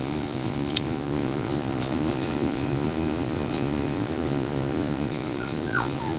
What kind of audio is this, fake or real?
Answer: fake